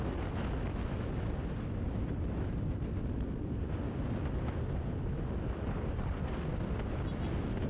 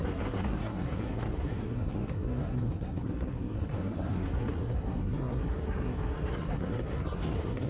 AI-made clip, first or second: second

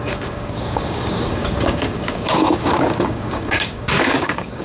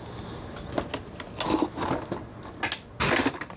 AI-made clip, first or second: first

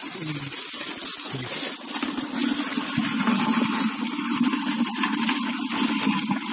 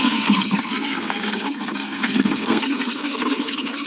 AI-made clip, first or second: second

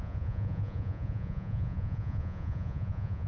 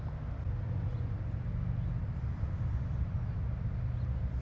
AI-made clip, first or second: first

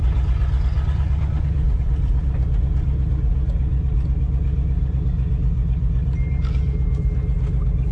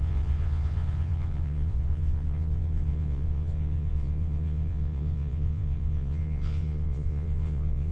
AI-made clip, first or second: second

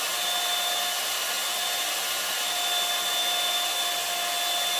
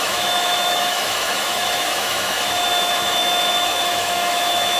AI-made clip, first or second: second